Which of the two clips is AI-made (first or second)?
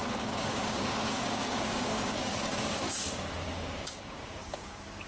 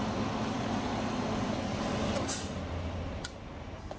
first